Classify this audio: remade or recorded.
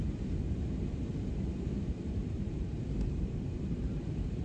remade